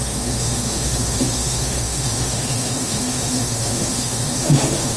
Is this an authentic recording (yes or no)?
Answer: no